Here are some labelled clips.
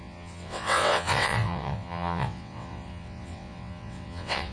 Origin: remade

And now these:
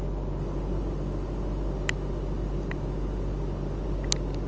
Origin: recorded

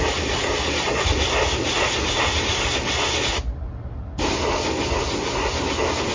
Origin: recorded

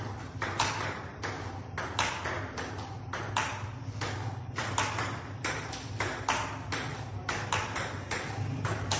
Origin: recorded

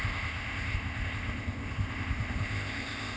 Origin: remade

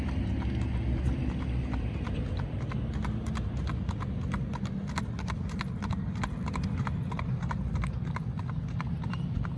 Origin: recorded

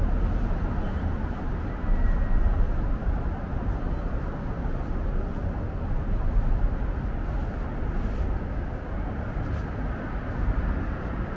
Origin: recorded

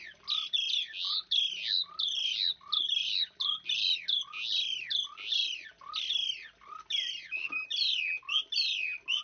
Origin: recorded